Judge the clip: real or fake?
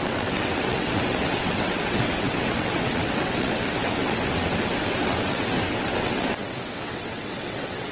fake